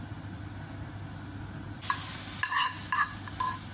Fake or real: real